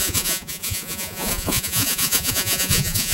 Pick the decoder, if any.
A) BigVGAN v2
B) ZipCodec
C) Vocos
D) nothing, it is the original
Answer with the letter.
C